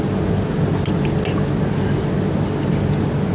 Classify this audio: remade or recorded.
recorded